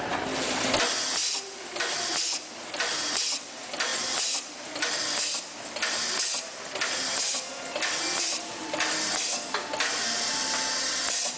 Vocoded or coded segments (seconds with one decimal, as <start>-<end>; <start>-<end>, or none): none